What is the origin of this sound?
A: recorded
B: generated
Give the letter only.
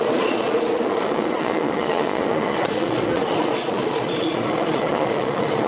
B